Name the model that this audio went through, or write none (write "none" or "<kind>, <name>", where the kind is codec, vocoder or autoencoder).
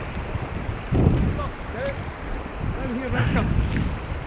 none